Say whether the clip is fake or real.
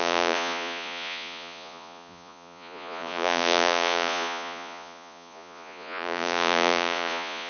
fake